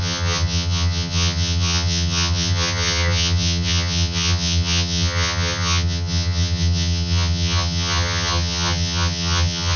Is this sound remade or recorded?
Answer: remade